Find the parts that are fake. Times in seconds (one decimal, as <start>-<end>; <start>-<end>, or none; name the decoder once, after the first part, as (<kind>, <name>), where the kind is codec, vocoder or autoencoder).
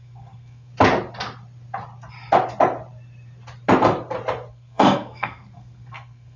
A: 0.0-0.7 (codec, SNAC); 4.5-6.4